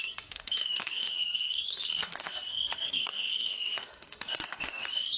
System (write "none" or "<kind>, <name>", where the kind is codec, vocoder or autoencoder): codec, SNAC